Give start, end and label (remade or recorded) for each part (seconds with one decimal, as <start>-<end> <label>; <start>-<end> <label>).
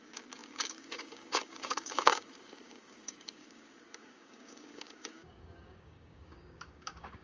0.0-7.2 remade